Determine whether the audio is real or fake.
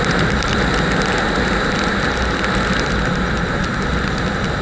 real